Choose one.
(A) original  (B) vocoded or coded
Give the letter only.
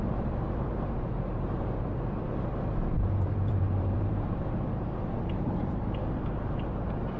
B